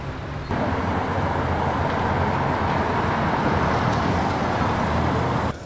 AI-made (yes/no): no